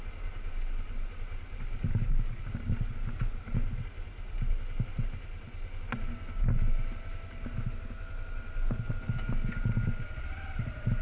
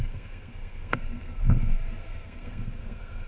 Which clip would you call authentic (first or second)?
first